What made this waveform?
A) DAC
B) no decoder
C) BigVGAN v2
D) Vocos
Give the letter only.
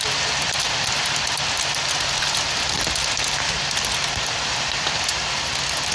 B